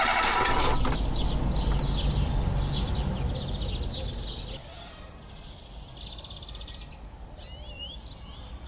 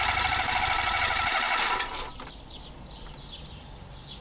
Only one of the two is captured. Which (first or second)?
first